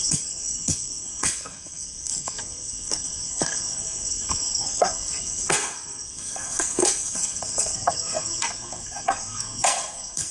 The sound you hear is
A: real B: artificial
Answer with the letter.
B